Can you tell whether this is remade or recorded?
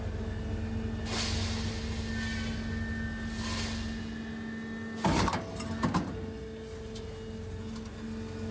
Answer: recorded